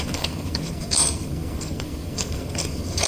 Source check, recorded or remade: remade